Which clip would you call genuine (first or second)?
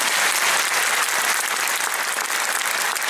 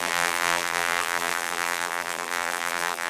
first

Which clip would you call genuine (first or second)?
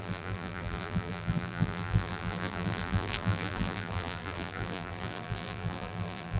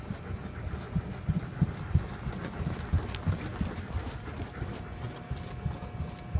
second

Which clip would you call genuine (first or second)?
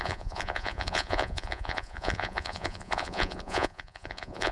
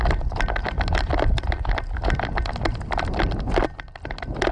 second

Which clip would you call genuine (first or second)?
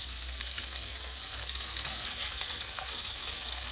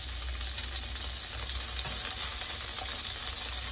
second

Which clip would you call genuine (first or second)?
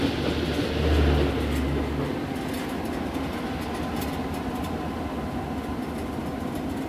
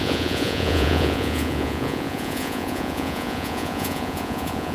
first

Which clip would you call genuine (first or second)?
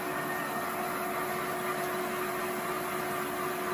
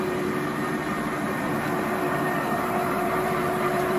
first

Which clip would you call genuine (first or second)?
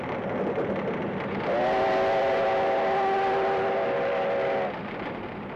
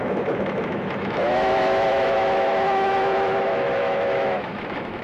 first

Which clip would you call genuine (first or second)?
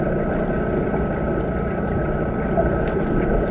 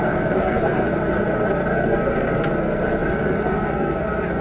first